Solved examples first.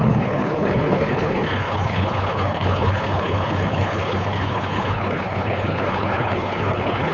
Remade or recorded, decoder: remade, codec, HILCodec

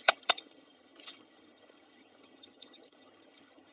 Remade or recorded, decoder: remade, vocoder, HiFi-GAN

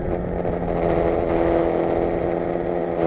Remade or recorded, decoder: recorded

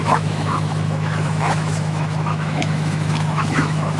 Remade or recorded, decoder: remade, autoencoder, DAC-VAE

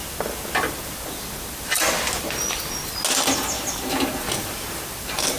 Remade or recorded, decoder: recorded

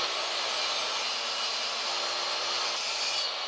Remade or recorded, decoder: recorded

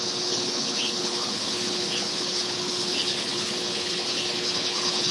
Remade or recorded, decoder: remade, codec, HILCodec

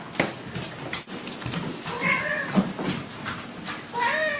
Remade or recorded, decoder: recorded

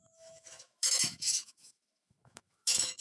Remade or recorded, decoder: remade, autoencoder, DAC-VAE